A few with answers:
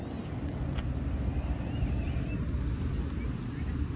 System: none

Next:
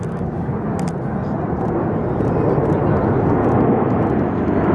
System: none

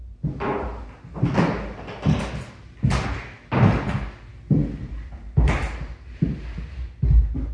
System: none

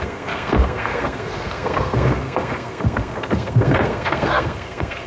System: codec, SNAC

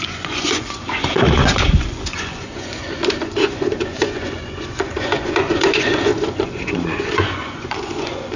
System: vocoder, Vocos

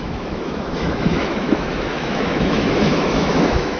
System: autoencoder, DAC-VAE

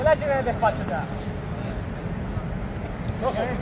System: none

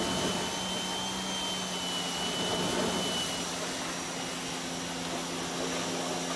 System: none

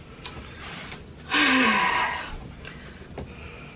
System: none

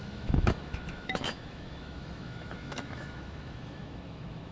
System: autoencoder, DAC-VAE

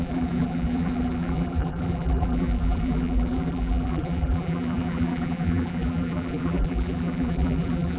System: vocoder, BigVGAN v2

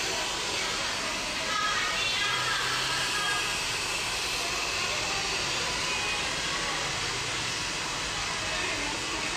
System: none